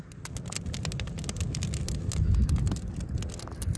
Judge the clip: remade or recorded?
recorded